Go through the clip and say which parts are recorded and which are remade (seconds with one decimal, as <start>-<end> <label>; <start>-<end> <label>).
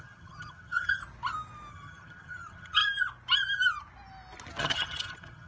0.0-1.0 remade; 1.0-1.7 recorded; 1.7-2.8 remade; 2.8-4.6 recorded; 4.6-5.5 remade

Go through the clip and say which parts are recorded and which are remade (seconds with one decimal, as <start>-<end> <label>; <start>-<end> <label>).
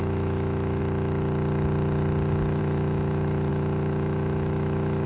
0.0-0.8 remade; 0.8-2.6 recorded; 2.6-5.1 remade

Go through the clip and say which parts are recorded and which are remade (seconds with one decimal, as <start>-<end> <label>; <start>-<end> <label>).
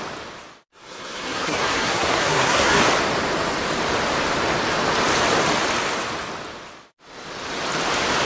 0.0-0.7 recorded; 0.7-2.8 remade; 2.8-8.2 recorded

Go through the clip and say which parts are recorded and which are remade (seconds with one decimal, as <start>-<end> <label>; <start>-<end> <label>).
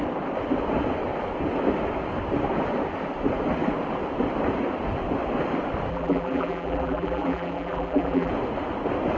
0.0-5.9 recorded; 5.9-8.3 remade; 8.3-9.2 recorded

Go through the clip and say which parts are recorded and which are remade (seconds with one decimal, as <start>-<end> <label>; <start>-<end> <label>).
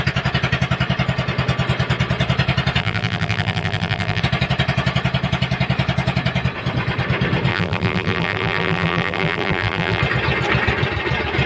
0.0-2.8 recorded; 2.8-4.2 remade; 4.2-7.5 recorded; 7.5-10.0 remade; 10.0-11.5 recorded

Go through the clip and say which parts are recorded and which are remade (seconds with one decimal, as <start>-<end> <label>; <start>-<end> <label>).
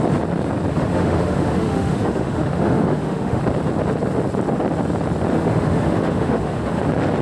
0.0-0.7 recorded; 0.7-3.4 remade; 3.4-5.3 recorded; 5.3-6.8 remade; 6.8-7.2 recorded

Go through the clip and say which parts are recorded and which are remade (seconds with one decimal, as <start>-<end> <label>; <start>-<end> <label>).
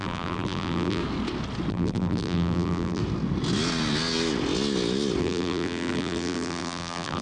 0.0-1.0 remade; 1.0-1.7 recorded; 1.7-3.0 remade; 3.0-5.2 recorded; 5.2-7.2 remade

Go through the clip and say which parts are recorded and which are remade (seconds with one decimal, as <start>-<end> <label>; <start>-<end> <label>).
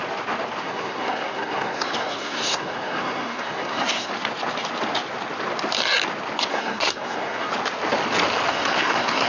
0.0-0.6 recorded; 0.6-4.1 remade; 4.1-6.5 recorded; 6.5-7.5 remade; 7.5-8.5 recorded; 8.5-9.3 remade